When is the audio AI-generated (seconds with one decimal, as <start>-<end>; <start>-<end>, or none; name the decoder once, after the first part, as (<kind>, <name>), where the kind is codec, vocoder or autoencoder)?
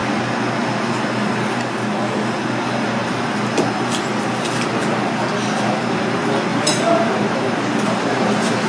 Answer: 6.5-8.7 (vocoder, BigVGAN v2)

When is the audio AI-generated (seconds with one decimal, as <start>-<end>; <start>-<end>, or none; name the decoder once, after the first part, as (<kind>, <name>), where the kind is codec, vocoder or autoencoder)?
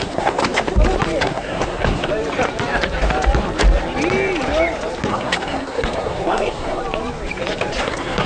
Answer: 0.0-0.4 (codec, SNAC); 1.2-2.1; 5.1-6.8; 7.8-8.3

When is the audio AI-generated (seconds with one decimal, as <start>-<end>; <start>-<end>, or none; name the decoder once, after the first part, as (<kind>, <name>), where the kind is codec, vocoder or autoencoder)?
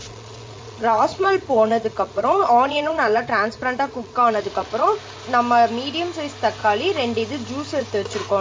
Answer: 0.0-5.0 (vocoder, Vocos)